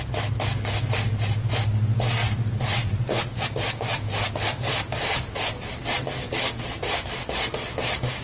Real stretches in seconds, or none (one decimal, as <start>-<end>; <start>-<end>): 0.0-2.2; 3.3-8.2